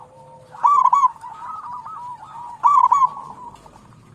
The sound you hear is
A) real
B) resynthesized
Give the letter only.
B